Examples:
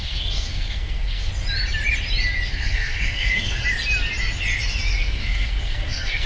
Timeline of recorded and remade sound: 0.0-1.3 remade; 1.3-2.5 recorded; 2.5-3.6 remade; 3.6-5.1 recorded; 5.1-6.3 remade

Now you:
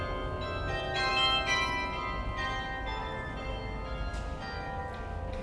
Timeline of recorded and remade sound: 0.0-3.0 recorded; 3.0-3.5 remade; 3.5-5.4 recorded

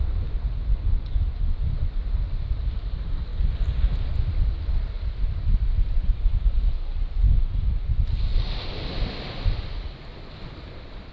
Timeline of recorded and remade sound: 0.0-11.1 recorded

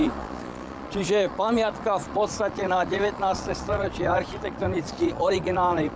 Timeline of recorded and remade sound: 0.0-6.0 remade

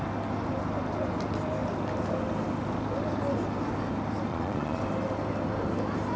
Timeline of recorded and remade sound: 0.0-4.3 recorded; 4.3-4.8 remade; 4.8-6.2 recorded

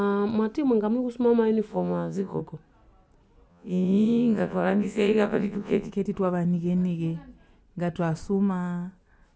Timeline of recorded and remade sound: 0.0-1.7 recorded; 1.7-2.4 remade; 2.4-3.5 recorded; 3.5-5.9 remade; 5.9-9.4 recorded

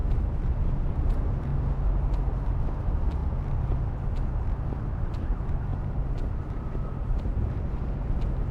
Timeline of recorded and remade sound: 0.0-1.5 remade; 1.5-2.6 recorded; 2.6-3.2 remade; 3.2-4.8 recorded; 4.8-8.5 remade

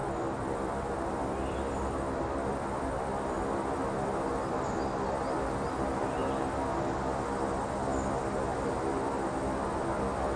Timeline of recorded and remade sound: 0.0-6.2 remade; 6.2-8.7 recorded; 8.7-10.4 remade